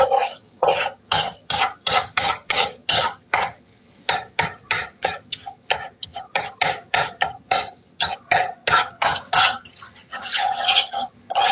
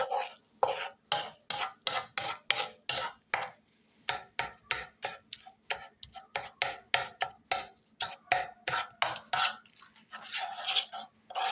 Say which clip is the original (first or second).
second